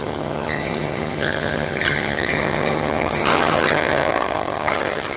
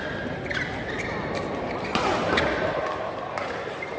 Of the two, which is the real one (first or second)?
second